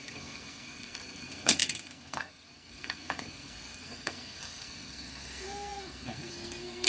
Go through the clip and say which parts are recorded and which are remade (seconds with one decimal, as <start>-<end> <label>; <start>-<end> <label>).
0.0-6.9 remade